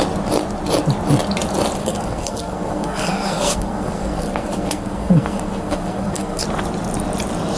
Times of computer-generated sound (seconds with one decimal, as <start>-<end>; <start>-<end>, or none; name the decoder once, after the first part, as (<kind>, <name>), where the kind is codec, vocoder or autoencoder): 1.8-6.4 (codec, SNAC)

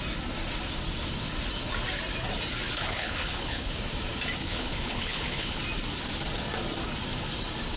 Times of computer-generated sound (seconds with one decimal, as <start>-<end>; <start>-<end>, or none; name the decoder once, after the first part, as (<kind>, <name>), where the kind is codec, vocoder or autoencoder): 2.7-3.7 (codec, HILCodec); 4.4-5.6

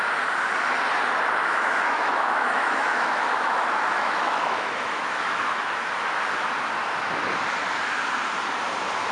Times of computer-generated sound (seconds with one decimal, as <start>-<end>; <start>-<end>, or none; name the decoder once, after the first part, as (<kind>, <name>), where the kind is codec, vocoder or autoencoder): 1.4-5.6 (autoencoder, DAC-VAE)